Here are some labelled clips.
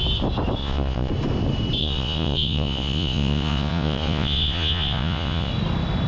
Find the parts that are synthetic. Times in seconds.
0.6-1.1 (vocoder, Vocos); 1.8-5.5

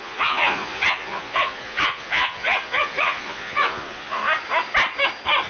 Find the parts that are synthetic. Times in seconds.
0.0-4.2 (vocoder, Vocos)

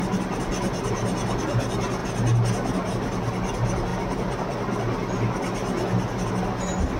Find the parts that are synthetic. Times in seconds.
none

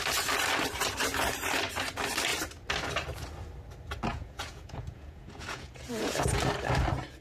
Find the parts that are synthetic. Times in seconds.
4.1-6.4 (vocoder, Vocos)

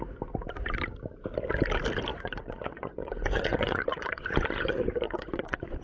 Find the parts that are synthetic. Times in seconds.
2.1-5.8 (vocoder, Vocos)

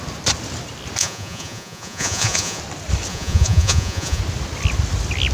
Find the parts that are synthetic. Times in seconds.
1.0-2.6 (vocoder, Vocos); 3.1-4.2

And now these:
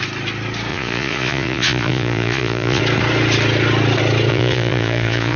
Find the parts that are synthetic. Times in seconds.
0.7-2.8 (vocoder, Vocos); 4.3-5.4

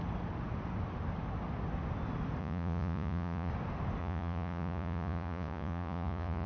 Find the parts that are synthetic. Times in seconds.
2.4-3.5 (vocoder, Vocos); 4.0-6.5